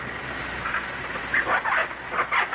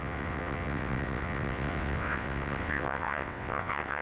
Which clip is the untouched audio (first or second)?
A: first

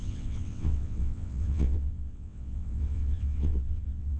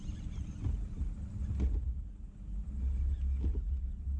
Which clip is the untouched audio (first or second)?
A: second